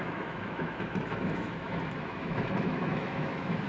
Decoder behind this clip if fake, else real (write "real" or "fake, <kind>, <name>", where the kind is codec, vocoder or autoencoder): fake, autoencoder, DAC-VAE